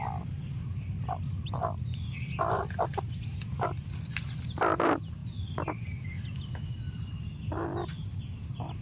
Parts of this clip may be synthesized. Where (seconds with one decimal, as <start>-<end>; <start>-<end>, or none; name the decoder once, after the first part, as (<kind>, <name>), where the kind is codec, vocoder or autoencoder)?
none